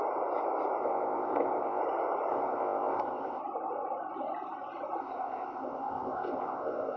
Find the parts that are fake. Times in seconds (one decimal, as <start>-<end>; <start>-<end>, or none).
0.8-1.8; 2.3-3.4; 5.0-7.0